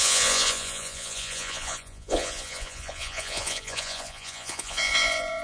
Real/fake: fake